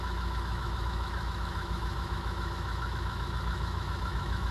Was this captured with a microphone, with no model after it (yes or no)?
no